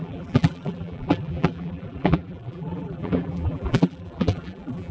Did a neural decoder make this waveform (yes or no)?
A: yes